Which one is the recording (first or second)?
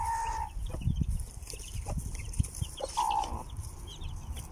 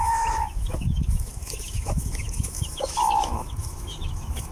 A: first